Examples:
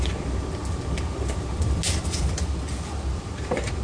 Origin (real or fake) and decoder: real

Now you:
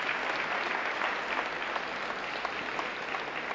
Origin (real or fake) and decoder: real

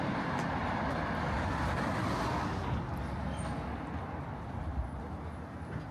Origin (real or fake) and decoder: real